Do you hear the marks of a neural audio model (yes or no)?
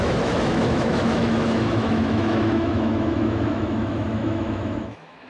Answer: yes